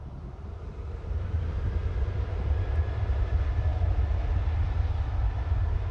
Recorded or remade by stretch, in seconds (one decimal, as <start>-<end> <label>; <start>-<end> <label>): 0.0-5.9 recorded